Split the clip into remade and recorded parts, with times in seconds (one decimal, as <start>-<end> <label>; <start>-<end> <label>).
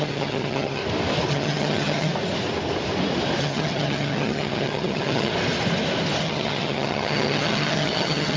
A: 0.0-0.8 remade; 0.8-1.3 recorded; 1.3-2.1 remade; 2.1-3.4 recorded; 3.4-5.3 remade; 5.3-6.2 recorded; 6.2-8.4 remade